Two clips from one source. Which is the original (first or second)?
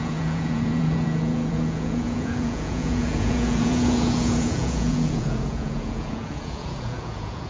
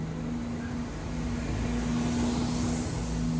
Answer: second